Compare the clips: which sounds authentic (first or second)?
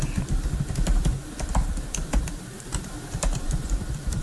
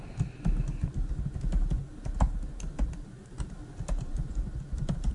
second